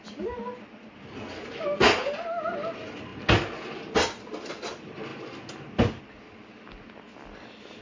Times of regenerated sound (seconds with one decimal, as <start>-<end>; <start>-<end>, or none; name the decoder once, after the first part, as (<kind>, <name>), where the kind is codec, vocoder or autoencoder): none